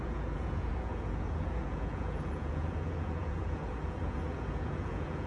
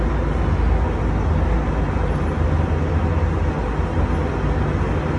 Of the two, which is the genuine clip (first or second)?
second